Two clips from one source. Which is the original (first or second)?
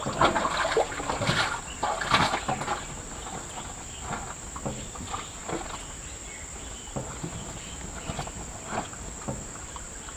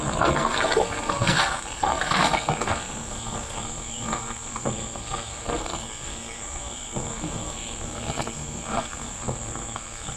first